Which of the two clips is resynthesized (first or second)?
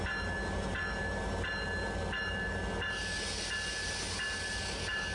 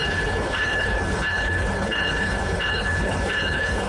second